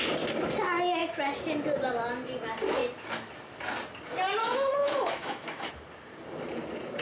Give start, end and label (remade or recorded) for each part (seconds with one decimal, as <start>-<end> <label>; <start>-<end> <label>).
0.0-4.4 recorded; 4.4-5.7 remade; 5.7-7.0 recorded